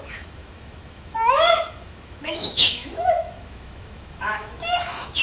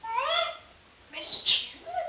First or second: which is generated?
first